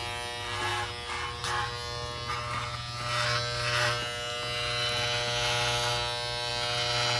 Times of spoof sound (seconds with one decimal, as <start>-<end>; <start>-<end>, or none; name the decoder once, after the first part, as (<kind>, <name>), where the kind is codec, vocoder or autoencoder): none